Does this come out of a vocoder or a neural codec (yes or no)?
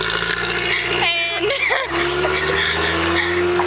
no